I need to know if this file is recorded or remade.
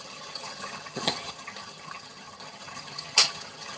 remade